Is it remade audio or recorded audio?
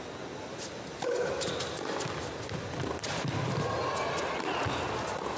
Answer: recorded